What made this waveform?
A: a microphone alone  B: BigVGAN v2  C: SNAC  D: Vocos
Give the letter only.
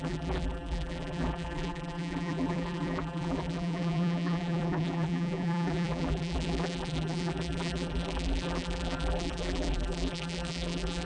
B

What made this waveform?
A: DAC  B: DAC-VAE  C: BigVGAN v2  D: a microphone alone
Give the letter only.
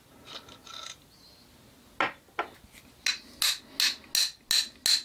D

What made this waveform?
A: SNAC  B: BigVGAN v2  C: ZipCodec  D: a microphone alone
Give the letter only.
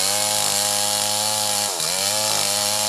D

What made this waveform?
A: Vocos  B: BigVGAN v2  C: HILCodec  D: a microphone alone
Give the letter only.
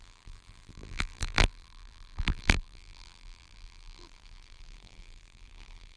B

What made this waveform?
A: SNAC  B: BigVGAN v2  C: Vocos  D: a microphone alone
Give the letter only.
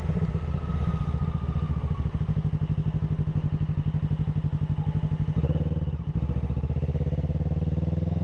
D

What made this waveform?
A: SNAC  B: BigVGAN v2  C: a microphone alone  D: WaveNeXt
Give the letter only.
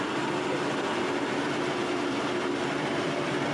B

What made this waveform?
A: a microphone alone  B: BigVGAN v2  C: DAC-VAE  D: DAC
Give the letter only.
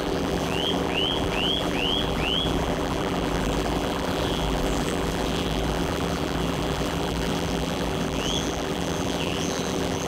B